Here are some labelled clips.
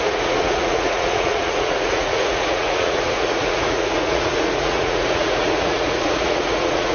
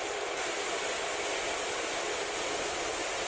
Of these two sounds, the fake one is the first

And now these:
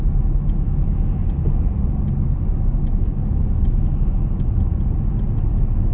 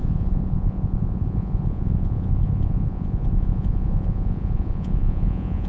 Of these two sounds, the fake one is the second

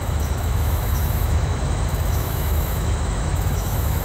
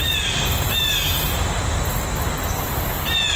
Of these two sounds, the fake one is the first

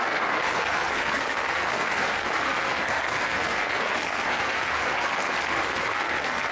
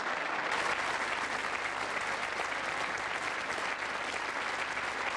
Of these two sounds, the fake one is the first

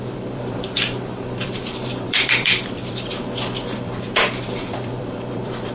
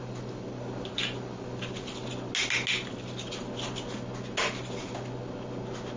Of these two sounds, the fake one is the first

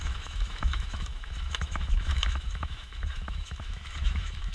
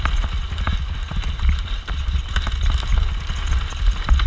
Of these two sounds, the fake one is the first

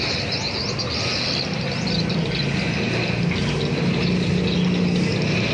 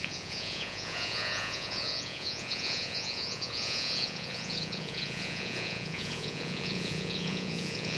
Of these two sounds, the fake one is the second